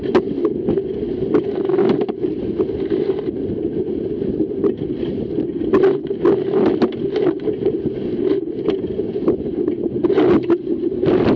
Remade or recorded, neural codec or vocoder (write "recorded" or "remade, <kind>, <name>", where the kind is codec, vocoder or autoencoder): recorded